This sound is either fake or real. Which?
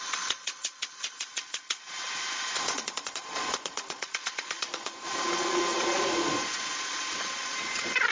fake